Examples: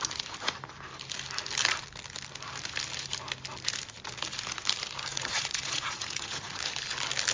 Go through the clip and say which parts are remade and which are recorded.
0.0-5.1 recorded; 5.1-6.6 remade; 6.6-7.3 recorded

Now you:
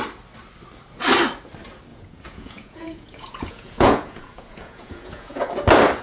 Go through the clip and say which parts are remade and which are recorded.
0.0-1.9 recorded; 1.9-5.5 remade; 5.5-6.0 recorded

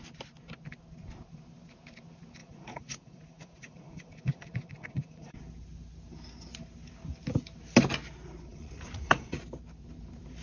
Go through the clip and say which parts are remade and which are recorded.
0.0-2.4 recorded; 2.4-5.4 remade; 5.4-8.5 recorded; 8.5-9.4 remade; 9.4-10.4 recorded

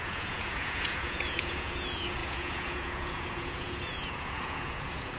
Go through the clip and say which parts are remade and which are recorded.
0.0-5.2 remade

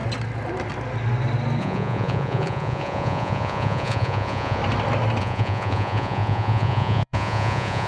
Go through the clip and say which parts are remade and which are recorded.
0.0-1.6 recorded; 1.6-4.6 remade; 4.6-5.2 recorded; 5.2-7.9 remade

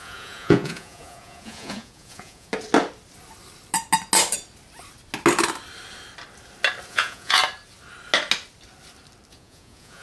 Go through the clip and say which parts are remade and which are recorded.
0.0-2.5 remade; 2.5-6.9 recorded; 6.9-7.4 remade; 7.4-9.3 recorded; 9.3-10.0 remade